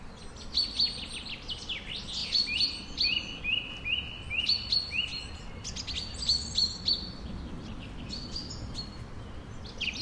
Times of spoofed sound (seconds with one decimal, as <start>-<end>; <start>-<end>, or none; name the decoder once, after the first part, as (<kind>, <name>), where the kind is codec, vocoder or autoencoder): none